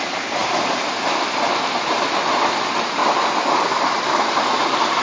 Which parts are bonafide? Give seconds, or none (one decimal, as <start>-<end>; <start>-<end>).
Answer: 0.0-5.0